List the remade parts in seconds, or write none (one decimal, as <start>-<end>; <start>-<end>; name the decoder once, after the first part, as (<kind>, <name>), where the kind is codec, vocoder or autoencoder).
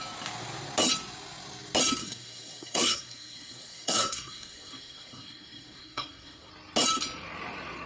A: 2.0-6.5 (codec, SNAC)